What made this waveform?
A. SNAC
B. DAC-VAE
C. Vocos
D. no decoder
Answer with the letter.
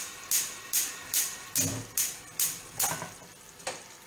D